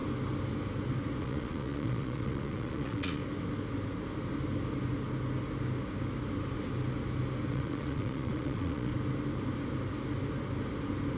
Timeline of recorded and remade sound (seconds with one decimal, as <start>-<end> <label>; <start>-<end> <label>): 0.0-1.2 recorded; 1.2-3.2 remade; 3.2-7.5 recorded; 7.5-8.9 remade; 8.9-11.2 recorded